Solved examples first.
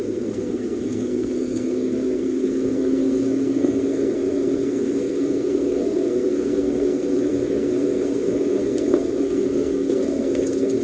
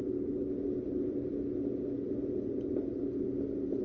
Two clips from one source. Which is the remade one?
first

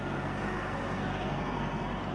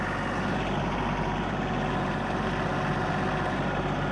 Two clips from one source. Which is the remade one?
first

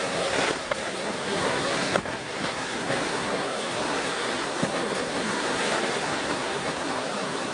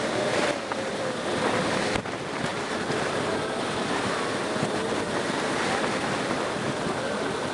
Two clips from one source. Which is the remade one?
first